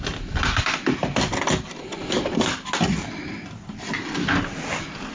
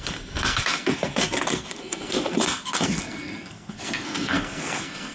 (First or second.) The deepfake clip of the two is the second